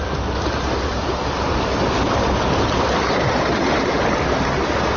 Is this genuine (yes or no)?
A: yes